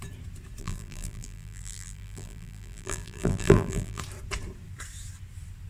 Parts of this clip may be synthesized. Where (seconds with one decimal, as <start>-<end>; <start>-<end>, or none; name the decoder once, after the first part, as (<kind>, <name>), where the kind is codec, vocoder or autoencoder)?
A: 0.6-4.0 (vocoder, BigVGAN v2)